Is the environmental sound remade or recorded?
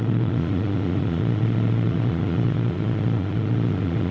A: remade